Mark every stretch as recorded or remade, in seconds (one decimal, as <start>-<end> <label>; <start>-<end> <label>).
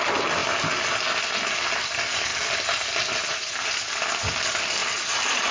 0.0-5.5 recorded